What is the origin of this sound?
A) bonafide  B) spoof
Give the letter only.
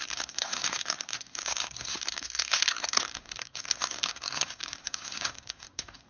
B